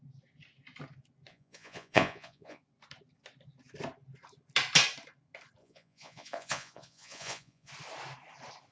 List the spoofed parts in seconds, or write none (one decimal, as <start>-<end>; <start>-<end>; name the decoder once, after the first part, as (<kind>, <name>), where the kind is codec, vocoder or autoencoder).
1.3-2.6 (vocoder, Vocos); 5.6-7.7